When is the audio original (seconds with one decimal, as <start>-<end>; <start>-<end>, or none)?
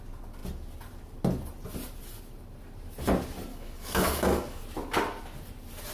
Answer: 0.0-3.5; 4.6-5.9